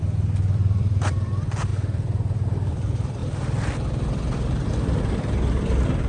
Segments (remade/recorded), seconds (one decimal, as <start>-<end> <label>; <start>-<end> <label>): 0.0-6.1 remade

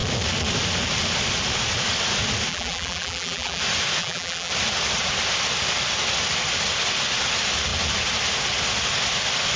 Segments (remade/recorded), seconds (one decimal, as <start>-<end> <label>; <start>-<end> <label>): 0.0-2.5 recorded; 2.5-3.6 remade; 3.6-4.0 recorded; 4.0-4.5 remade; 4.5-9.6 recorded

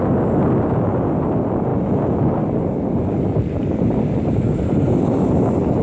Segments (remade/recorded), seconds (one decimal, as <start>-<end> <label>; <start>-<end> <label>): 0.0-5.8 recorded

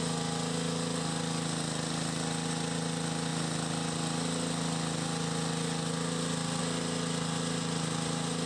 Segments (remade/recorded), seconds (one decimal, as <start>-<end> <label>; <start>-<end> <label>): 0.0-8.5 recorded

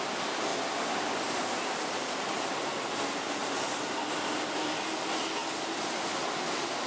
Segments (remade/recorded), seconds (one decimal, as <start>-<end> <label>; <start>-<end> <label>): 0.0-3.4 recorded; 3.4-3.9 remade; 3.9-6.9 recorded

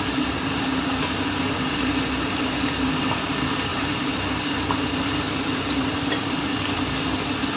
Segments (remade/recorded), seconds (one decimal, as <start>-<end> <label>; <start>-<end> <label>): 0.0-3.7 recorded; 3.7-7.0 remade; 7.0-7.6 recorded

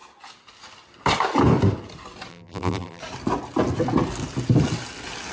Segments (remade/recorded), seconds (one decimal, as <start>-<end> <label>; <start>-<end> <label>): 0.0-2.3 recorded; 2.3-3.0 remade; 3.0-5.3 recorded

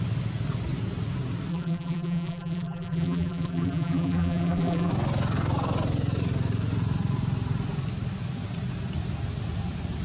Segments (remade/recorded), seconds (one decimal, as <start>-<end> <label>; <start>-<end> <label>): 0.0-1.5 recorded; 1.5-4.9 remade; 4.9-10.0 recorded